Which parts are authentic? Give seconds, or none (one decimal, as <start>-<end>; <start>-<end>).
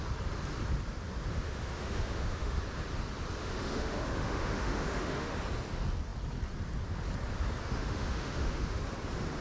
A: 0.0-1.3; 2.6-3.4; 5.3-7.6; 8.8-9.4